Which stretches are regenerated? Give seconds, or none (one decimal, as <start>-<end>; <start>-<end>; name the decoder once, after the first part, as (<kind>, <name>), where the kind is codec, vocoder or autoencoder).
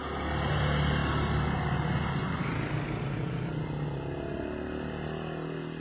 none